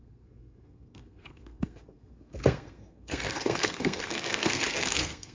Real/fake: fake